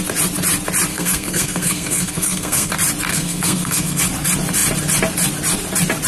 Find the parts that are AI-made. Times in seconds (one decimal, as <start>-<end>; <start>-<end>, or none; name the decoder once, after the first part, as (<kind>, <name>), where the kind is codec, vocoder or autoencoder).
0.9-2.7 (codec, SNAC); 3.1-4.0